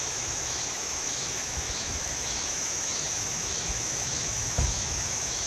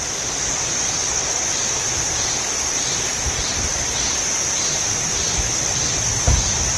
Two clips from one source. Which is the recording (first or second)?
second